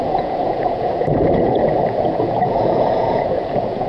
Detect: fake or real fake